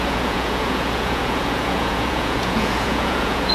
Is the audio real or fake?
fake